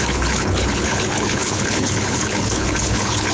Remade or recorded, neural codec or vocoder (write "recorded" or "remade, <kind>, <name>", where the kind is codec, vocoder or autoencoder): remade, codec, HILCodec